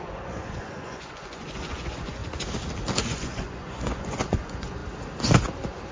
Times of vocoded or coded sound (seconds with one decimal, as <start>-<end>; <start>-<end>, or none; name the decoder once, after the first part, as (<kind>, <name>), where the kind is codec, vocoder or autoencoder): 0.0-2.2 (vocoder, Vocos); 3.0-4.8